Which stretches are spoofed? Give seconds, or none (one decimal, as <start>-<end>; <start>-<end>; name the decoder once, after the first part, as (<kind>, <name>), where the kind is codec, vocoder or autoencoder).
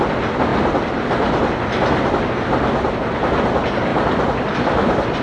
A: 0.5-1.0 (vocoder, BigVGAN v2); 3.9-5.2